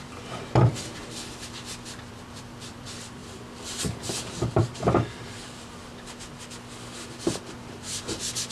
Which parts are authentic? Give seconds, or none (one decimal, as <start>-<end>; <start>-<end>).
1.0-2.0; 5.7-8.5